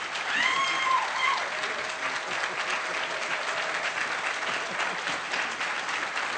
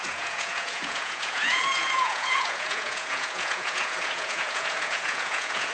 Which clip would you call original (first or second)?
first